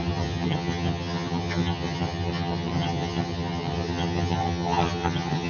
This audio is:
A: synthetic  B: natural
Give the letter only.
A